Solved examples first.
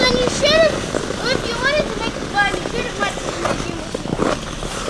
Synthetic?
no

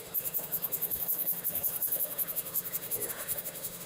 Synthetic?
yes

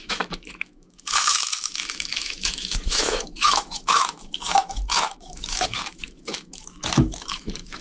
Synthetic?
yes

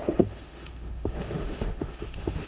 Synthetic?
yes